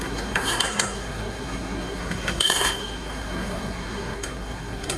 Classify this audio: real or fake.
fake